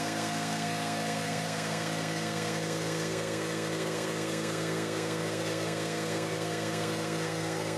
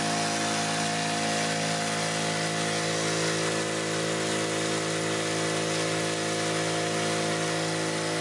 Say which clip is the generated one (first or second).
first